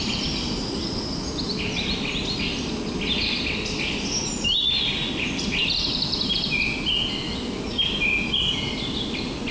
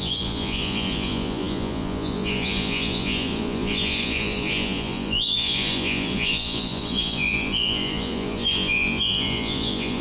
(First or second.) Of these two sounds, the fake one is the second